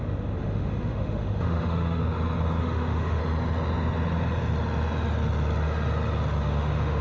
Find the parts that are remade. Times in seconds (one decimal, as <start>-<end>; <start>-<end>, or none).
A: 0.0-2.0; 2.6-3.2; 6.4-7.0